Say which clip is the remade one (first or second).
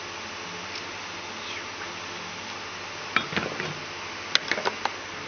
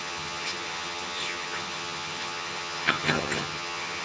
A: second